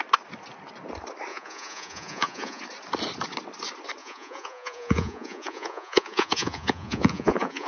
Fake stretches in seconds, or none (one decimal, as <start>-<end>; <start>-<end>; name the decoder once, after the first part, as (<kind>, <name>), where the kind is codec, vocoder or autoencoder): 1.3-2.6 (vocoder, Vocos); 4.0-7.7

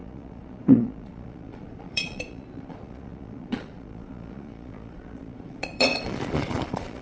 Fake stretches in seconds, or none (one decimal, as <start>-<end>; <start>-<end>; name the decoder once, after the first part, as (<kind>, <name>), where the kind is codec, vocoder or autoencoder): 0.0-7.0 (vocoder, Vocos)

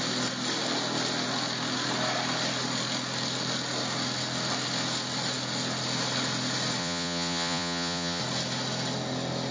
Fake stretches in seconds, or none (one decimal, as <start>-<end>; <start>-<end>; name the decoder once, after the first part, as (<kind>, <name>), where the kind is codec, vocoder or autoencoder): 6.8-8.2 (vocoder, Vocos)